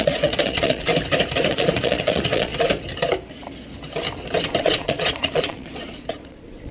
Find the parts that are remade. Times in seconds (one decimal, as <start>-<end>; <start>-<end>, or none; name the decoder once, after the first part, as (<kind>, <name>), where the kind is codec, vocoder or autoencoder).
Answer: 0.0-0.9 (vocoder, Vocos); 1.5-2.5; 4.6-6.7